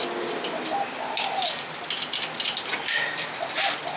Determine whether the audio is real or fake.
real